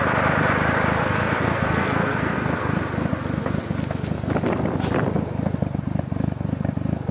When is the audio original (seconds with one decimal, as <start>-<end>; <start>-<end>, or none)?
0.0-1.0; 2.8-7.1